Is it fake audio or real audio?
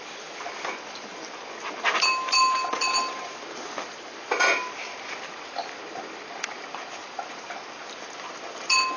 real